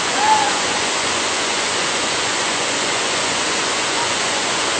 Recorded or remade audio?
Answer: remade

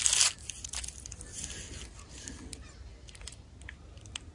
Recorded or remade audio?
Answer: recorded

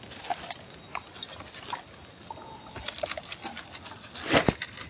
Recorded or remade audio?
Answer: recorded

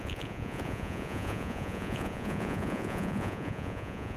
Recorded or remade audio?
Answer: remade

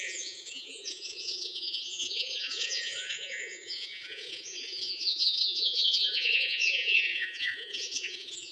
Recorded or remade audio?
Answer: remade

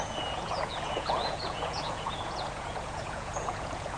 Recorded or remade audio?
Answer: remade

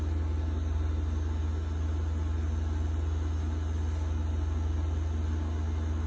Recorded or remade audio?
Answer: recorded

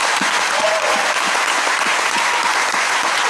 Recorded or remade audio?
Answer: remade